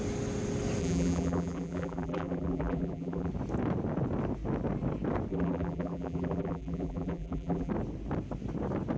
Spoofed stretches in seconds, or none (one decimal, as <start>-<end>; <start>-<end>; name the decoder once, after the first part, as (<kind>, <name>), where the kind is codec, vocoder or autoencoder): 0.8-3.3 (vocoder, BigVGAN v2); 5.3-7.7

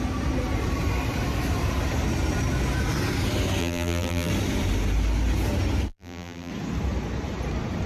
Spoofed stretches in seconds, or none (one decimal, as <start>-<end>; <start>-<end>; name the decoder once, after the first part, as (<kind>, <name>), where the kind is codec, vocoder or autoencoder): 3.6-4.3 (vocoder, BigVGAN v2); 5.9-6.5

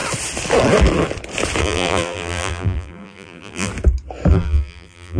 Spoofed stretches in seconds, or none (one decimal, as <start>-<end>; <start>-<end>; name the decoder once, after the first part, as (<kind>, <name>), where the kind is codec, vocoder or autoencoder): 1.6-3.7 (vocoder, BigVGAN v2); 4.3-5.2

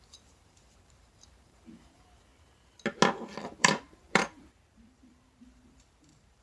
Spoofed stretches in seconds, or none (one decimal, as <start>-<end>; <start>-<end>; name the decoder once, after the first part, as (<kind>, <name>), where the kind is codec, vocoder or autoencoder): 0.0-2.3 (vocoder, BigVGAN v2); 3.4-6.4